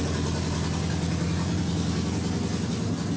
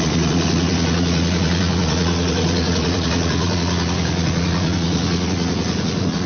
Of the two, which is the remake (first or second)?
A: second